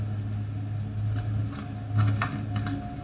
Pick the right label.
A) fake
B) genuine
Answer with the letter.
B